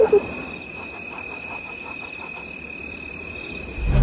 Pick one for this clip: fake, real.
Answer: real